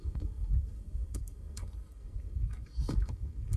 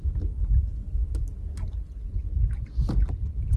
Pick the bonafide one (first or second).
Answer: second